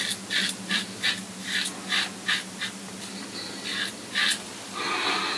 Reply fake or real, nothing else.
real